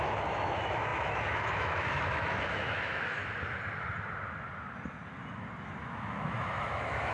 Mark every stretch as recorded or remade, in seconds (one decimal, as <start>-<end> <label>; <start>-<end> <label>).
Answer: 0.0-3.2 remade; 3.2-5.8 recorded; 5.8-7.1 remade